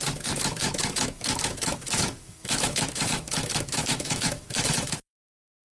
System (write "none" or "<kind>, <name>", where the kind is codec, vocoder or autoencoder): autoencoder, DAC-VAE